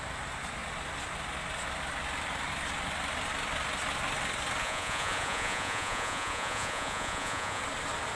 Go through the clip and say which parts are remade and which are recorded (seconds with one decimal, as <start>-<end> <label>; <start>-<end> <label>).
0.0-4.6 recorded; 4.6-7.6 remade; 7.6-8.2 recorded